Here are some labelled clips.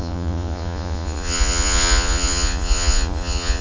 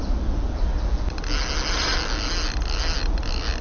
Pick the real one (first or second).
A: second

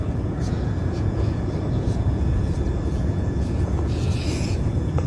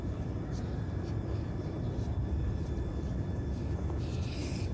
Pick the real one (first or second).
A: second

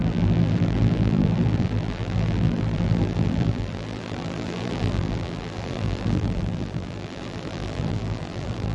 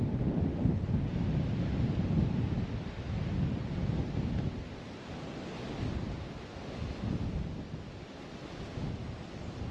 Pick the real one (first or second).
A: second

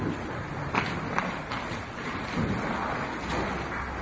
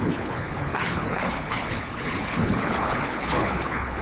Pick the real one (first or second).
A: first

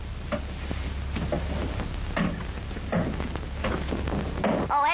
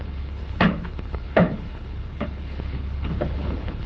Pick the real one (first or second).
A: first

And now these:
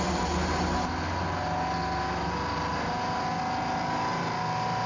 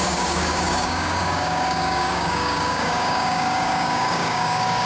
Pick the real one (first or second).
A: first